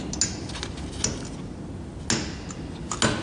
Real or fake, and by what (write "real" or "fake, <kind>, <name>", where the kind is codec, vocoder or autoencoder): real